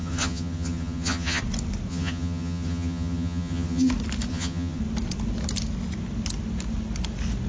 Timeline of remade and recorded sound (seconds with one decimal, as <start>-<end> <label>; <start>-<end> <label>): 0.0-1.4 remade; 1.4-1.9 recorded; 1.9-3.9 remade; 3.9-4.3 recorded; 4.3-4.8 remade; 4.8-7.5 recorded